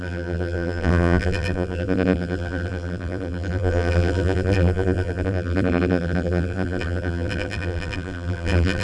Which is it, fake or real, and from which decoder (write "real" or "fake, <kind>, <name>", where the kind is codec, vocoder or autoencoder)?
fake, vocoder, BigVGAN v2